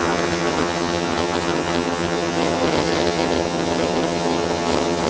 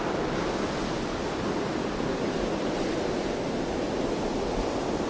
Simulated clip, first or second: first